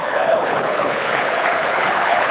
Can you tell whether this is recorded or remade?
remade